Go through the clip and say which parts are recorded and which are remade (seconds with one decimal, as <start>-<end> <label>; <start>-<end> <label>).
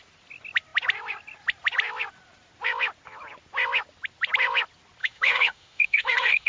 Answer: 0.0-5.0 recorded; 5.0-6.5 remade